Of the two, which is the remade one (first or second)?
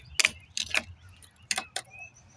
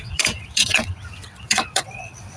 second